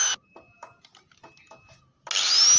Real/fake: real